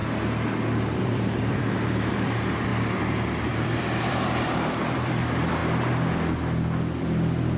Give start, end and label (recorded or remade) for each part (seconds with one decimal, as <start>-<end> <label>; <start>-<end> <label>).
0.0-1.0 recorded; 1.0-5.6 remade; 5.6-7.6 recorded